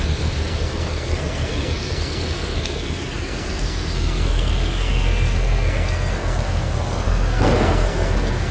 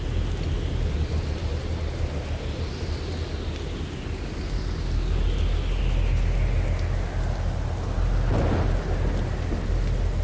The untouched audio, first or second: second